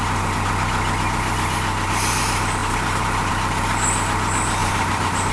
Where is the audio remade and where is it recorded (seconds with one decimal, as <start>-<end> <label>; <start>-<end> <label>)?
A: 0.0-4.6 recorded; 4.6-5.3 remade